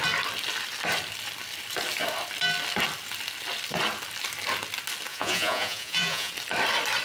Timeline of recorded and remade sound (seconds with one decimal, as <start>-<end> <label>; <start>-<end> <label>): 0.0-5.1 recorded; 5.1-6.3 remade; 6.3-7.0 recorded